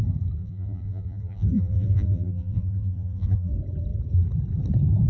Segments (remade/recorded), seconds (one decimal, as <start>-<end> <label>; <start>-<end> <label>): 0.0-0.4 recorded; 0.4-3.5 remade; 3.5-5.1 recorded